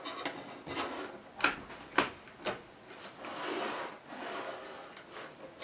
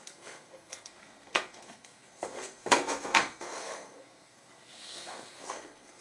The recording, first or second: first